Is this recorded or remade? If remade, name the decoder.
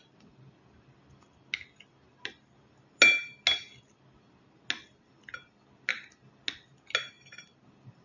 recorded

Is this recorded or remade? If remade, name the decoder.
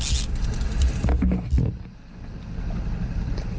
recorded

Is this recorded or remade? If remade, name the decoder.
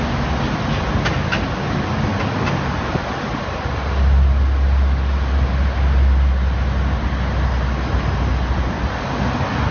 recorded